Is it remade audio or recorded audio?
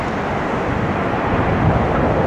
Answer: recorded